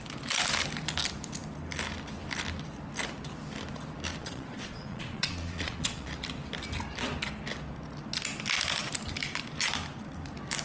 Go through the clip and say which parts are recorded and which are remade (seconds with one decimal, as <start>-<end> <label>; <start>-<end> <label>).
0.0-4.2 recorded; 4.2-6.1 remade; 6.1-10.6 recorded

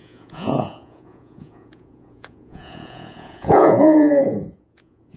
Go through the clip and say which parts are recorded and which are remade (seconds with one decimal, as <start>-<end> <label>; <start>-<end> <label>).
0.0-5.2 remade

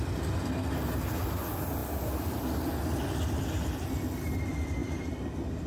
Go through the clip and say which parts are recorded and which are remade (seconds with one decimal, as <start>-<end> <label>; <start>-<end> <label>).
0.0-5.7 recorded

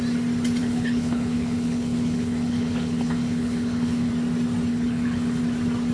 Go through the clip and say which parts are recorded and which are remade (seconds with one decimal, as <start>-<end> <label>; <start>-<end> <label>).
0.0-0.6 recorded; 0.6-4.1 remade; 4.1-4.7 recorded; 4.7-5.4 remade; 5.4-5.9 recorded